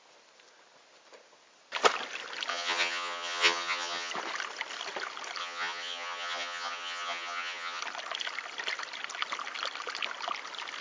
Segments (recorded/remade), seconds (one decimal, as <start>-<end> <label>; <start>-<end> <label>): 0.0-2.5 recorded; 2.5-4.1 remade; 4.1-5.4 recorded; 5.4-7.8 remade; 7.8-10.8 recorded